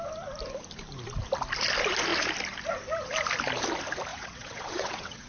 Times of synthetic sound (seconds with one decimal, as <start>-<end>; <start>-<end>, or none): 4.1-5.3